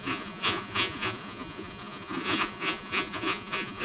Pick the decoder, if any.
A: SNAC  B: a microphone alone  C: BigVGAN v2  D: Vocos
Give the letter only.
D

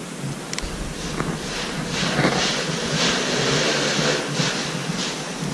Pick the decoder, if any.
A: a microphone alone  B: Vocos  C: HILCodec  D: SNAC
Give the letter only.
A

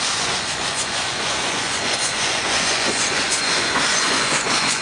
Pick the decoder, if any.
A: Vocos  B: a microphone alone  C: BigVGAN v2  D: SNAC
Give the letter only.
A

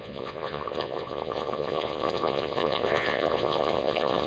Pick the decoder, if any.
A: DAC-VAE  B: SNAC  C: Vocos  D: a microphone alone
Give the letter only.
C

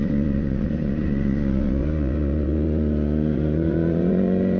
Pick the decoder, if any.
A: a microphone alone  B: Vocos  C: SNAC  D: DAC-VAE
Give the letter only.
B